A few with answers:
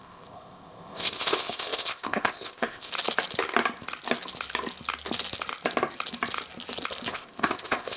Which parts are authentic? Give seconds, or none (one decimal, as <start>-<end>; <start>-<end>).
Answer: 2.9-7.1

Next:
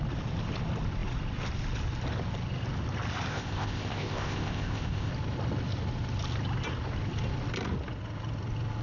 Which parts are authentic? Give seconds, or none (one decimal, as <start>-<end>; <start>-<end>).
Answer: 0.0-3.3; 5.1-8.8

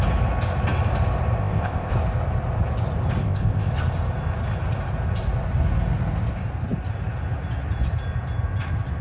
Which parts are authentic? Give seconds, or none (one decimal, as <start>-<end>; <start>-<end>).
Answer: 0.0-1.4; 1.9-3.2; 3.7-9.0

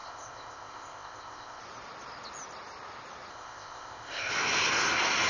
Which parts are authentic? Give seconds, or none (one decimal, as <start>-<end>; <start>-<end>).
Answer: 1.6-3.3; 4.3-5.3

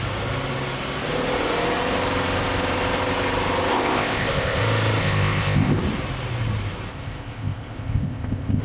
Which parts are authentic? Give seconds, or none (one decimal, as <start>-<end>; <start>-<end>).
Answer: 0.0-3.7; 4.6-5.0; 5.8-6.9